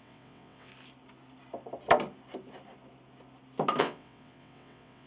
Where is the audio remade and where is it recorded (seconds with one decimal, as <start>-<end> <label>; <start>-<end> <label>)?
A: 0.0-0.7 remade; 0.7-3.8 recorded; 3.8-5.1 remade